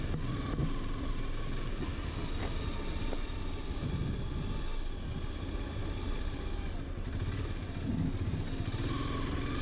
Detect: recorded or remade recorded